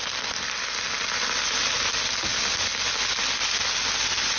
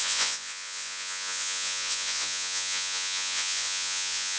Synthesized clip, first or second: second